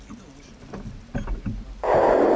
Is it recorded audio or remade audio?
recorded